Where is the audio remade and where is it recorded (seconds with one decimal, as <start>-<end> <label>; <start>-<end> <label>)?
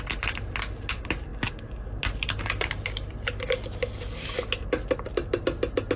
0.0-6.0 recorded